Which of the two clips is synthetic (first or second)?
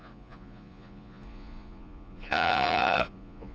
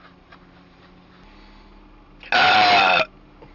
first